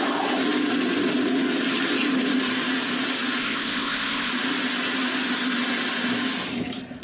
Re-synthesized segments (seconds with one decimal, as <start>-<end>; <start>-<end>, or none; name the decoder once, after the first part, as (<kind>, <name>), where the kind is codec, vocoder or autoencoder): 3.4-4.3 (codec, ZipCodec)